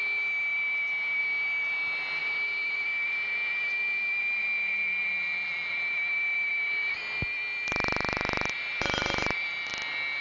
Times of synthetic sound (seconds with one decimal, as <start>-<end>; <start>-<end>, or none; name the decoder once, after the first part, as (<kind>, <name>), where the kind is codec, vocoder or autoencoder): 2.2-6.9 (vocoder, BigVGAN v2); 7.6-9.7